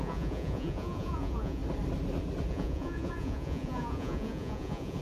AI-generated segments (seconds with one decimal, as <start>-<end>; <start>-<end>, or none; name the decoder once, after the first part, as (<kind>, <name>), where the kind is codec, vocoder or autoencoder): 0.0-1.6 (vocoder, Vocos); 2.5-5.0